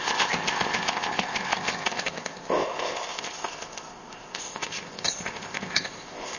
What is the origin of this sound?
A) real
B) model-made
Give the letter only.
B